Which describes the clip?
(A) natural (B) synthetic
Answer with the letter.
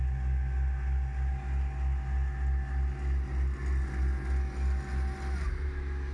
A